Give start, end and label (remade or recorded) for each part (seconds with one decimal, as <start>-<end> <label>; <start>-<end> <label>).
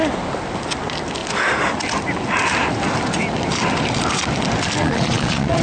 0.0-4.8 recorded; 4.8-5.6 remade